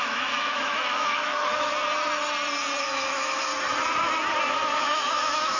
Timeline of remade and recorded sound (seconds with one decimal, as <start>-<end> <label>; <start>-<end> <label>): 0.0-1.7 remade; 1.7-2.8 recorded; 2.8-3.5 remade; 3.5-4.8 recorded; 4.8-5.6 remade